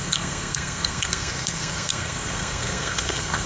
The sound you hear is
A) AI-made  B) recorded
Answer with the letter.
A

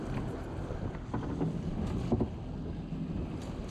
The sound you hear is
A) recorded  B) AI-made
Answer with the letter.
A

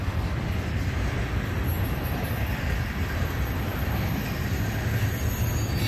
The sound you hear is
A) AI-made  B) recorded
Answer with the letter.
B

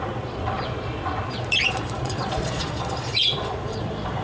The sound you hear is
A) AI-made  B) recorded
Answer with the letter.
A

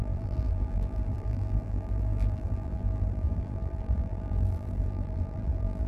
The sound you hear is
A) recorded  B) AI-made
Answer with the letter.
B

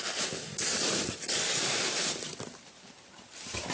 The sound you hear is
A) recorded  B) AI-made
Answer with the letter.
A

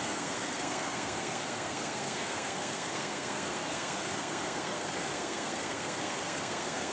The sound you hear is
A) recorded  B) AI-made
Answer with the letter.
B